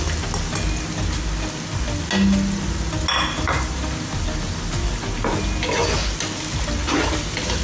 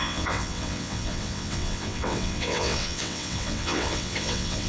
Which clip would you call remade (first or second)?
second